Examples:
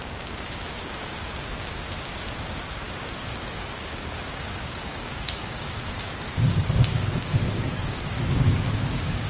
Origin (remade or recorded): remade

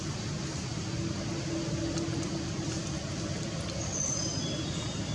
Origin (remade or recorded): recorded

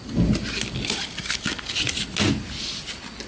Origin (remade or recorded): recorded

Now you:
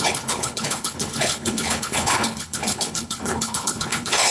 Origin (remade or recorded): remade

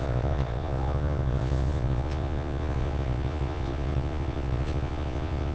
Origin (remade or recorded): remade